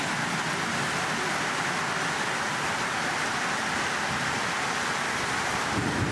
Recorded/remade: recorded